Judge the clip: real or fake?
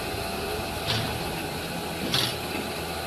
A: real